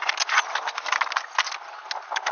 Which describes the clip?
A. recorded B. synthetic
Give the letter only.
A